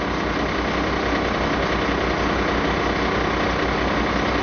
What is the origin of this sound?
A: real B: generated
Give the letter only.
A